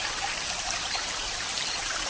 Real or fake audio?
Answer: fake